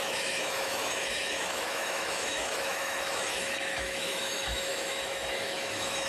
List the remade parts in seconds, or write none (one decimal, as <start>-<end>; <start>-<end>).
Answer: 0.0-6.1